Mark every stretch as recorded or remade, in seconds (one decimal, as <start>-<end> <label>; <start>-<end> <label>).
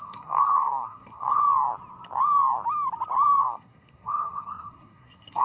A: 0.0-1.4 remade; 1.4-3.4 recorded; 3.4-5.4 remade